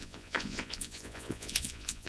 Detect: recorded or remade remade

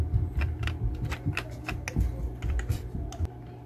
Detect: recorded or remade recorded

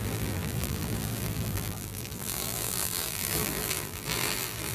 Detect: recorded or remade remade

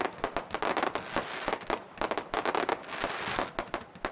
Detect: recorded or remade recorded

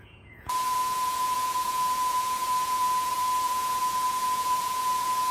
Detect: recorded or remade remade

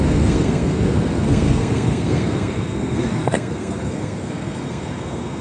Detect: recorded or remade remade